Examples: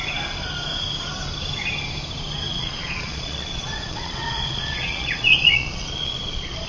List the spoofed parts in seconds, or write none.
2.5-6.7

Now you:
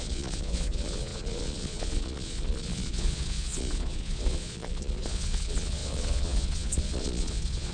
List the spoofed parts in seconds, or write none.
0.0-7.7

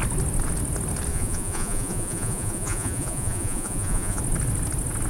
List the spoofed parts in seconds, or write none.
1.1-4.2